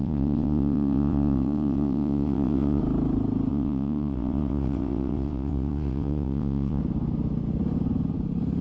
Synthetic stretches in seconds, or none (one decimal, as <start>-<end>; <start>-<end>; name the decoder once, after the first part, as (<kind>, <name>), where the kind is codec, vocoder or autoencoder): 0.0-2.8 (vocoder, WaveNeXt); 3.5-6.8